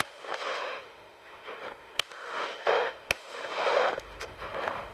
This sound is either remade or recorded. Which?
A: remade